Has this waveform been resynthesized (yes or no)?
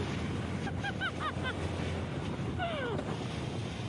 no